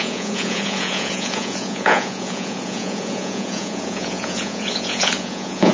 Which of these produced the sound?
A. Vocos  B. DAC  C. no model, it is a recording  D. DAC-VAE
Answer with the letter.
A